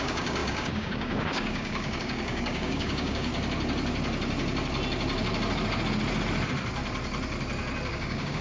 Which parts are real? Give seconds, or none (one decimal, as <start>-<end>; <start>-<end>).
3.3-7.9